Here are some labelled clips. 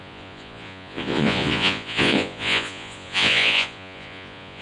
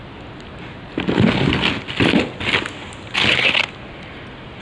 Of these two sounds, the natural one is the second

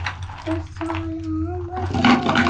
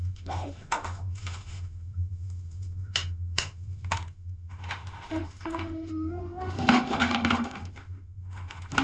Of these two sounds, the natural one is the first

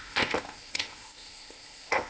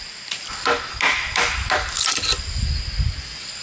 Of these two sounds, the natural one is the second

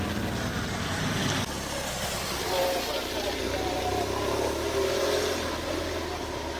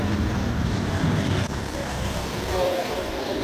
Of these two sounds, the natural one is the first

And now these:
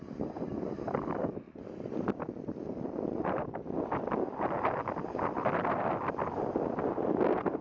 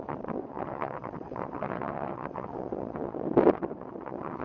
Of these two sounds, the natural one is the first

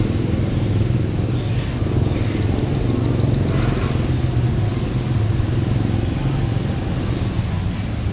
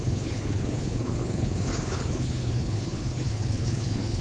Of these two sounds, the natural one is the first